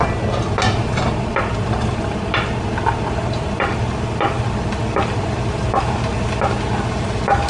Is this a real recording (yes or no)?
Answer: yes